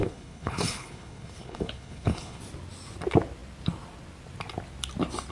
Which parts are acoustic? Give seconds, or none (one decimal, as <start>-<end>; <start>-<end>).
2.4-5.3